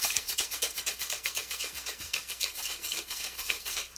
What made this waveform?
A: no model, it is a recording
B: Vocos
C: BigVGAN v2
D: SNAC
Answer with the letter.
D